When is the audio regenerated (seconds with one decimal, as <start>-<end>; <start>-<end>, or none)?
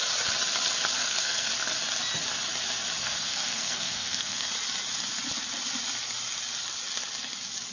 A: 1.0-1.5; 3.0-4.5